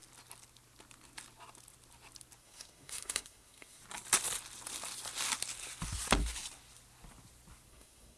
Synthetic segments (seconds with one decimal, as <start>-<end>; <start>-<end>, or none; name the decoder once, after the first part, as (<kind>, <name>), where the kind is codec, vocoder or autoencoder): 2.4-3.8 (codec, SNAC); 7.7-8.2